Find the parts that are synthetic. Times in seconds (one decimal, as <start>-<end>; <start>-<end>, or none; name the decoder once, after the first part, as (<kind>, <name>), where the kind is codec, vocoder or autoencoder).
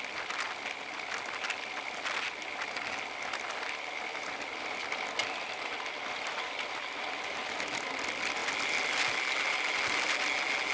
none